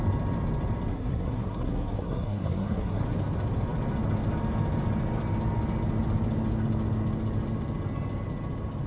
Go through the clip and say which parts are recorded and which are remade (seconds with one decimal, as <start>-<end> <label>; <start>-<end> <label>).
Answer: 0.0-0.9 recorded; 0.9-3.0 remade; 3.0-8.9 recorded